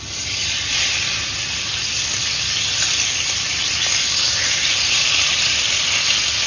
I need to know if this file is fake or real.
real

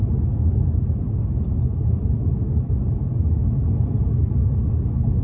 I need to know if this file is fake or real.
real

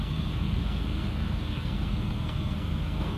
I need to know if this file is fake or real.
fake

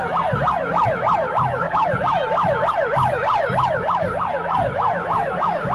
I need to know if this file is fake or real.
real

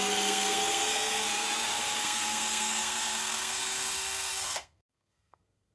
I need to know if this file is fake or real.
fake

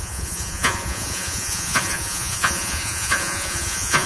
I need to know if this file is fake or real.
fake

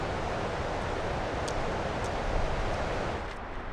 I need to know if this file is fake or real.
real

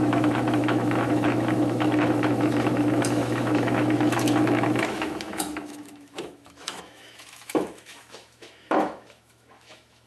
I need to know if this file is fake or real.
fake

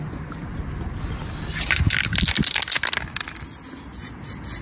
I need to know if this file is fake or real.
real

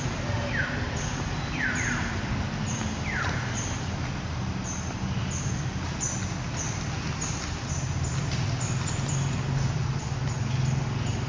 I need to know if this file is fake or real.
real